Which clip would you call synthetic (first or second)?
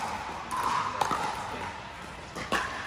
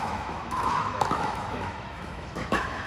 second